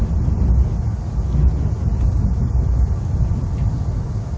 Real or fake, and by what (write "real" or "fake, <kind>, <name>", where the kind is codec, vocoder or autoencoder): real